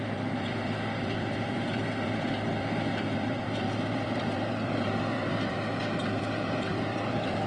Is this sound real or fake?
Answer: fake